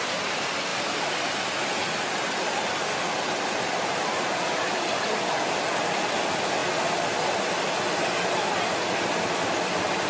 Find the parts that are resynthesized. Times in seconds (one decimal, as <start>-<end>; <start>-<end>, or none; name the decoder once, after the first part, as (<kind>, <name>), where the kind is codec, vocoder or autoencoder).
none